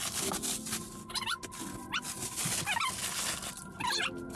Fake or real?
real